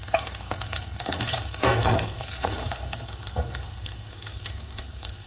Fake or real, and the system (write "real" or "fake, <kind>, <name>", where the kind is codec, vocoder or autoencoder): fake, codec, SNAC